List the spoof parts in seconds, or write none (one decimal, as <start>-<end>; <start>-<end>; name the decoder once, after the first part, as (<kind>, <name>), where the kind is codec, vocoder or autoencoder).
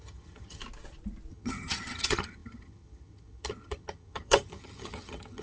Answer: 0.0-0.6 (vocoder, HiFi-GAN); 1.3-5.4